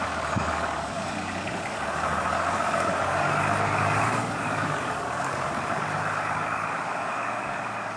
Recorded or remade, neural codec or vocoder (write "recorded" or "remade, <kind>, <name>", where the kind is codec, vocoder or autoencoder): remade, codec, DAC